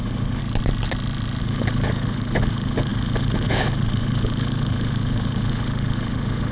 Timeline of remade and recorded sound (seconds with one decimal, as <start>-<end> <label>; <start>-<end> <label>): 0.0-0.4 remade; 0.4-1.4 recorded; 1.4-6.5 remade